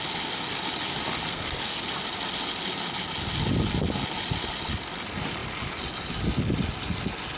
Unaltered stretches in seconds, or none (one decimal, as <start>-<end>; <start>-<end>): 0.0-1.3; 1.8-7.4